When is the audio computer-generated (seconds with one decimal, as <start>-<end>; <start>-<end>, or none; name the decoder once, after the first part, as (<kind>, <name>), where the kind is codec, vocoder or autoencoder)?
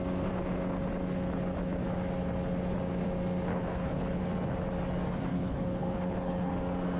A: 3.5-4.2 (codec, HILCodec); 5.3-6.5